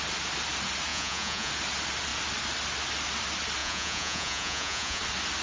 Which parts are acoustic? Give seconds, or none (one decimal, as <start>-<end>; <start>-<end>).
0.0-0.9; 1.5-3.6; 5.0-5.4

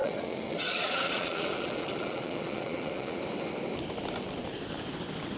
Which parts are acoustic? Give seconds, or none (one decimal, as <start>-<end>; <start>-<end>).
3.2-5.4